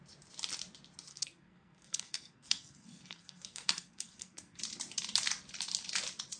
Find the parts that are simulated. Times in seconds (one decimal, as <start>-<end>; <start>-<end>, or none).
1.1-4.6